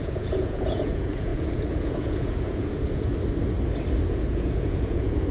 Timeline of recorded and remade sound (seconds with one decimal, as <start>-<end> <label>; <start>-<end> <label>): 0.0-3.1 remade; 3.1-4.0 recorded; 4.0-5.3 remade